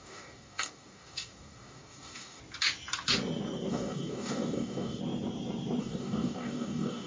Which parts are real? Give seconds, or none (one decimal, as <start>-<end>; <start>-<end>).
2.4-3.7; 5.0-5.8

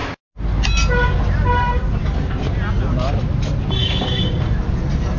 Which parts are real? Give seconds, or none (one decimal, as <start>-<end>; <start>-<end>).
0.0-3.8; 4.4-5.2

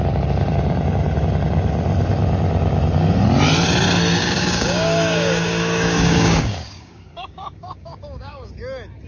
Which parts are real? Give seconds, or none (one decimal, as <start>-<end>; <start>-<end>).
0.0-4.2; 8.5-9.1

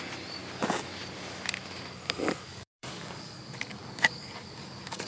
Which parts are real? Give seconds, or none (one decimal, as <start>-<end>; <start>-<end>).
0.0-2.5